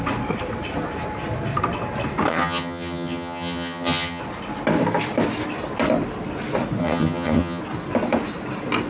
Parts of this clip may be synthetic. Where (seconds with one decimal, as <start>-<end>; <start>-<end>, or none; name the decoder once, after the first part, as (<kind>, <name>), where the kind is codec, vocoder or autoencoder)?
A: 2.3-4.2 (vocoder, HiFi-GAN); 6.8-7.6